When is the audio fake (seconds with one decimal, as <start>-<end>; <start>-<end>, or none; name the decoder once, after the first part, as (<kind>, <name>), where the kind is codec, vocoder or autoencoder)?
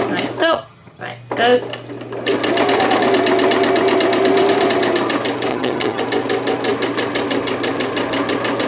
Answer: 0.4-1.0 (vocoder, HiFi-GAN); 5.5-6.0